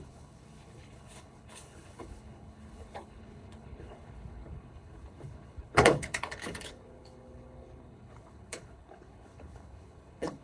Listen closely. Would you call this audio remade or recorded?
remade